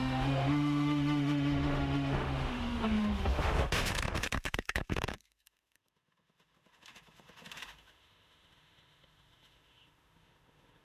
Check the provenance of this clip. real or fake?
fake